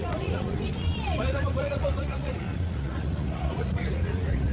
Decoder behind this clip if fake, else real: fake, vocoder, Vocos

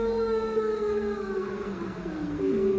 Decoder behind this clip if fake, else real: fake, codec, SNAC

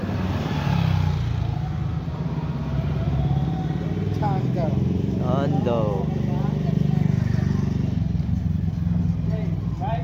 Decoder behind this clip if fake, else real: real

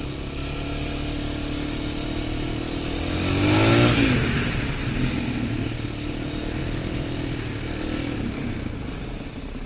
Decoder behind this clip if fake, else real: real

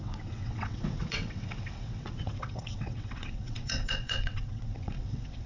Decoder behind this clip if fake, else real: fake, vocoder, WaveNeXt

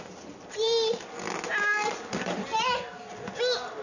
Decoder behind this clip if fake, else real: real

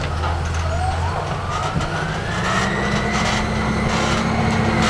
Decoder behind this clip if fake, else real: real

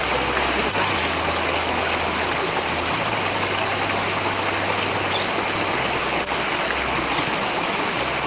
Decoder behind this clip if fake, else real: real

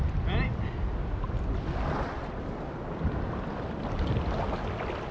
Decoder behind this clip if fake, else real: real